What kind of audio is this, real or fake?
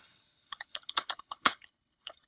fake